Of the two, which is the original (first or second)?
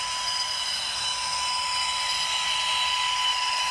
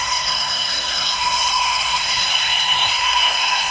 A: first